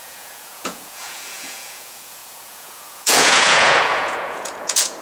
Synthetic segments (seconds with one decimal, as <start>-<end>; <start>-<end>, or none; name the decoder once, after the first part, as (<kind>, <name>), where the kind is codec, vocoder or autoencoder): 0.0-5.0 (vocoder, Vocos)